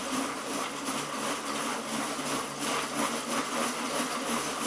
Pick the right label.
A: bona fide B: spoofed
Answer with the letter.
A